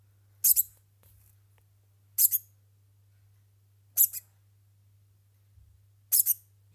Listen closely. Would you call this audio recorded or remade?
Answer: recorded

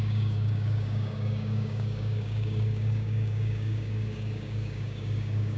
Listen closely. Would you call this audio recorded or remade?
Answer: remade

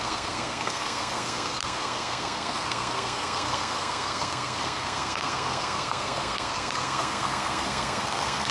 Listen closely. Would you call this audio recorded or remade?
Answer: remade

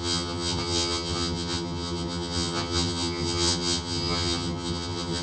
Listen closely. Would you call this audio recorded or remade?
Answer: remade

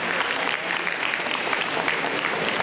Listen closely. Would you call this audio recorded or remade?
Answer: remade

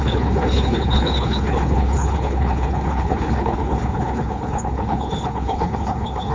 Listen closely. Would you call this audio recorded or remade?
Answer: remade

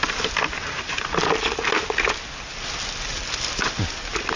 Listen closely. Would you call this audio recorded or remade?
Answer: recorded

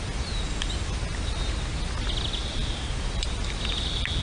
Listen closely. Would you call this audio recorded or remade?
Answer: recorded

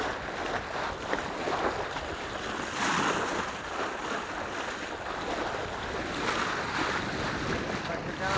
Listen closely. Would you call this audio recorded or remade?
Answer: recorded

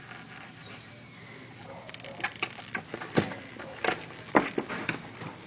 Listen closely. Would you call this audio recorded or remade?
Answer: recorded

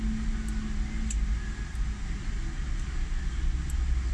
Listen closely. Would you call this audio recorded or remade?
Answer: recorded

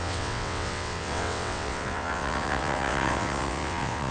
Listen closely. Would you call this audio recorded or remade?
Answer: remade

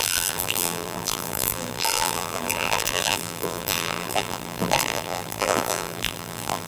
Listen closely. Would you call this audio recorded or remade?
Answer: remade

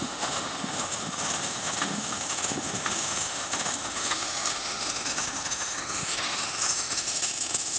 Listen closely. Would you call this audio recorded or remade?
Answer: remade